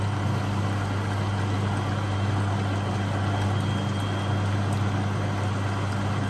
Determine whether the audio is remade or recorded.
recorded